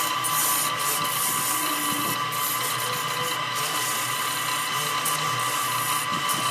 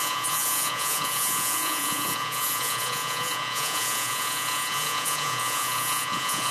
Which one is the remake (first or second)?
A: second